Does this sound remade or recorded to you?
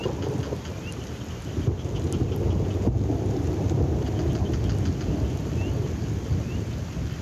recorded